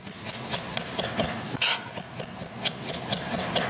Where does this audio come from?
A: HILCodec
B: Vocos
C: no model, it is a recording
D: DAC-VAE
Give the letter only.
C